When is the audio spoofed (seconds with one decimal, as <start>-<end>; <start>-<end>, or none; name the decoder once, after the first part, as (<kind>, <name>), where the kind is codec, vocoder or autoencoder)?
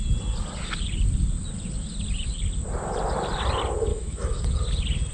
3.9-4.4 (autoencoder, DAC-VAE)